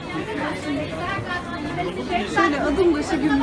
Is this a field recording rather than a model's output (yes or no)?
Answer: yes